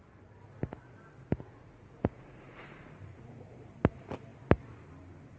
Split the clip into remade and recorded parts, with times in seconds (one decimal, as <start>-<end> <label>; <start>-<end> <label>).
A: 0.0-1.5 recorded; 1.5-2.9 remade; 2.9-5.4 recorded